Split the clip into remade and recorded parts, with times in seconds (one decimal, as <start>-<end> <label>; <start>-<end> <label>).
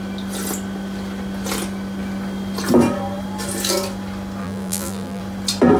0.0-4.4 recorded; 4.4-5.2 remade; 5.2-5.8 recorded